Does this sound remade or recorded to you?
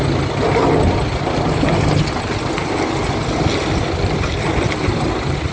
recorded